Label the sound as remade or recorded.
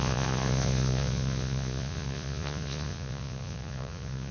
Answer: remade